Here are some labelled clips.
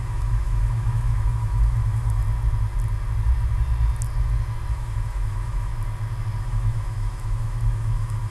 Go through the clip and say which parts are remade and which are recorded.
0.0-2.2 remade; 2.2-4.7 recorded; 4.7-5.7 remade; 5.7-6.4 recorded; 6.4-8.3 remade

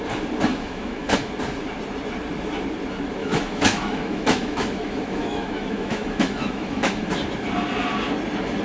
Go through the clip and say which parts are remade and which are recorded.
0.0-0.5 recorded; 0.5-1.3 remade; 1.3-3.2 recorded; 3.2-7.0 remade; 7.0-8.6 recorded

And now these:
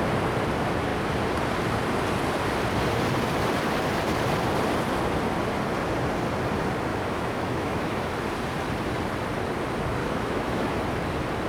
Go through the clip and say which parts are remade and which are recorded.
0.0-6.9 recorded; 6.9-8.1 remade; 8.1-10.0 recorded; 10.0-10.8 remade; 10.8-11.5 recorded

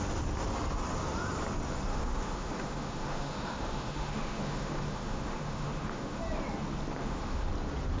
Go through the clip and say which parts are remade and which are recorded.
0.0-1.9 recorded; 1.9-6.2 remade; 6.2-7.0 recorded; 7.0-7.5 remade; 7.5-8.0 recorded

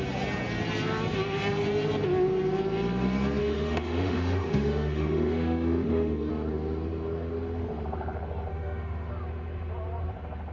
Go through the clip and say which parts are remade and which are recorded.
0.0-3.4 recorded; 3.4-6.3 remade; 6.3-8.5 recorded; 8.5-9.1 remade; 9.1-10.5 recorded

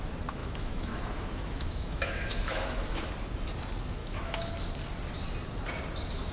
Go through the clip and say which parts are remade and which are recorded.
0.0-0.4 recorded; 0.4-3.1 remade; 3.1-4.0 recorded; 4.0-4.5 remade; 4.5-6.3 recorded

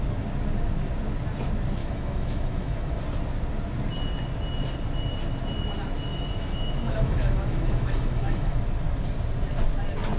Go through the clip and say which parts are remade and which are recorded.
0.0-1.8 recorded; 1.8-3.0 remade; 3.0-6.1 recorded; 6.1-8.6 remade; 8.6-10.2 recorded

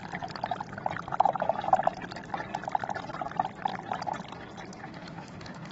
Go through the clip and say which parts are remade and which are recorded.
0.0-4.8 recorded; 4.8-5.7 remade